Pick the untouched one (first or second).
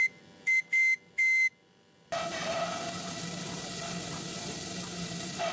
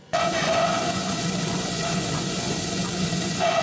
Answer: first